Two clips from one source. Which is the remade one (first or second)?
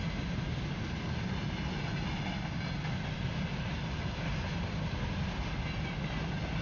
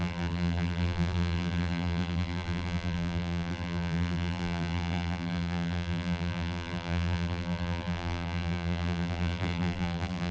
second